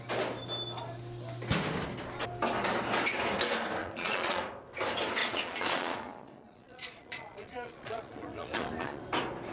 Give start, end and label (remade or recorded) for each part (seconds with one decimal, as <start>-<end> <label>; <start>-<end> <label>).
0.0-3.8 recorded; 3.8-4.4 remade; 4.4-5.2 recorded; 5.2-9.0 remade; 9.0-9.5 recorded